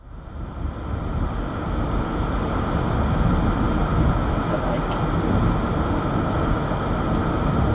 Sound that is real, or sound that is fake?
real